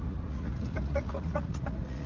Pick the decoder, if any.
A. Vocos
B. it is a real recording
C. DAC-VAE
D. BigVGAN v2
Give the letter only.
A